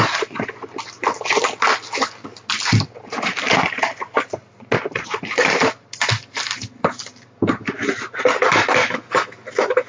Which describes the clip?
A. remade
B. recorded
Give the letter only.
B